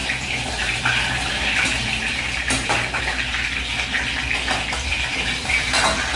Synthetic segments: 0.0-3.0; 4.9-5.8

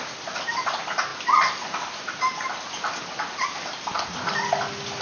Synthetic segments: none

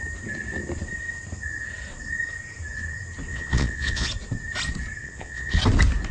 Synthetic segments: 3.3-4.1; 5.0-5.6

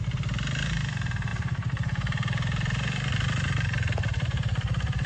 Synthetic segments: 0.0-5.1